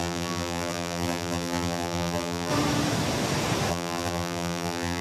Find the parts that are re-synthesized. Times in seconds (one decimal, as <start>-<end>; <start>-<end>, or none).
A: 0.0-2.5; 3.7-5.0